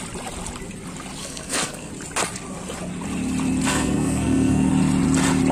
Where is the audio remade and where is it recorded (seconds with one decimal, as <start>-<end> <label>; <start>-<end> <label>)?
0.0-1.2 recorded; 1.2-1.9 remade; 1.9-3.7 recorded; 3.7-4.7 remade; 4.7-5.5 recorded